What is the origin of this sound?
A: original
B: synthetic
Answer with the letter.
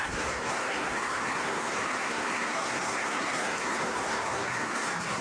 B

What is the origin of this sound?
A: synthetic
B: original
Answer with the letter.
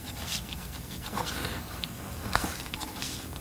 A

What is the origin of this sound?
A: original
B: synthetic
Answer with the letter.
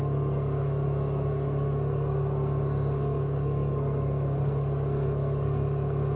B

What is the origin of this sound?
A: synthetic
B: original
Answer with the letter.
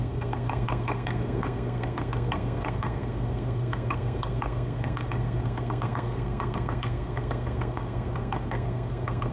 A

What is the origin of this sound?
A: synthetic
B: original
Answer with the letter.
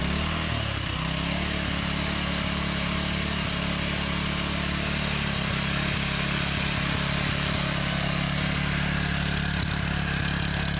B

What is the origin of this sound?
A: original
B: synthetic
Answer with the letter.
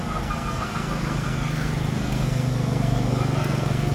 B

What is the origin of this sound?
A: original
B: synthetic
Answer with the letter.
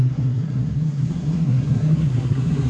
B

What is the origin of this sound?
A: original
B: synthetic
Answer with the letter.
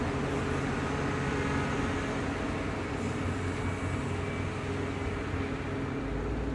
A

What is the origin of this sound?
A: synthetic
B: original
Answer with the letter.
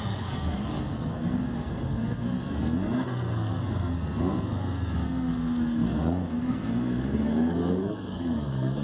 A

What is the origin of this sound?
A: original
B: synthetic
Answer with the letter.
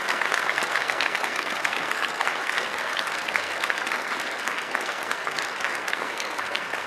B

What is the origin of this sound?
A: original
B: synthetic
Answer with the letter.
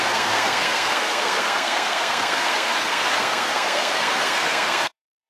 B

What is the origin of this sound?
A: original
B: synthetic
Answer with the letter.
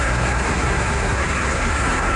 B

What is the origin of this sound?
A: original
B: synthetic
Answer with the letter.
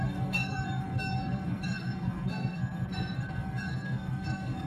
B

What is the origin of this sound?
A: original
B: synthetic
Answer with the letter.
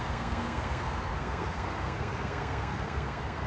B